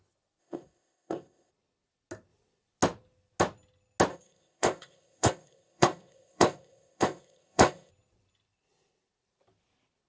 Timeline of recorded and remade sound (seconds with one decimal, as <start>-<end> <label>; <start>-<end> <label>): 0.0-0.4 recorded; 0.4-1.5 remade; 1.5-4.1 recorded; 4.1-7.9 remade; 7.9-10.1 recorded